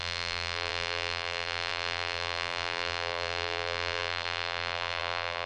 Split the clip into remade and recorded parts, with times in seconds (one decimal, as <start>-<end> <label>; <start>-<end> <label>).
0.0-5.5 remade

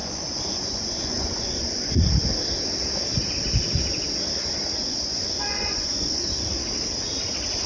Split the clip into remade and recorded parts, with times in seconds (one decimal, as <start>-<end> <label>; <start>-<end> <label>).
0.0-2.1 remade; 2.1-4.8 recorded; 4.8-6.3 remade; 6.3-7.7 recorded

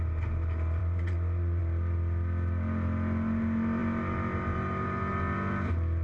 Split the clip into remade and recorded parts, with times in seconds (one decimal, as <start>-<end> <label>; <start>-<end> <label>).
0.0-0.8 recorded; 0.8-1.6 remade; 1.6-6.0 recorded

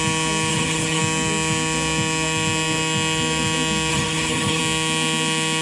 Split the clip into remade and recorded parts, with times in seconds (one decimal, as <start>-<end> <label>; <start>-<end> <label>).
0.0-0.5 recorded; 0.5-1.0 remade; 1.0-3.9 recorded; 3.9-4.6 remade; 4.6-5.6 recorded

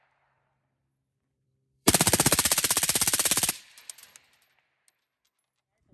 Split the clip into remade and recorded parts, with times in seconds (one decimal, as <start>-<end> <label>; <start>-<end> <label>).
0.0-1.1 recorded; 1.1-3.5 remade; 3.5-5.9 recorded

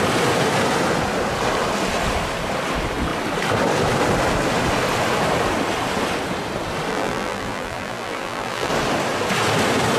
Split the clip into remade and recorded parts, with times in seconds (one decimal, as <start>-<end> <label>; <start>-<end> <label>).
0.0-6.9 recorded; 6.9-8.7 remade; 8.7-10.0 recorded